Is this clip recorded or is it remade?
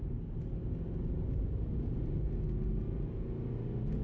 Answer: recorded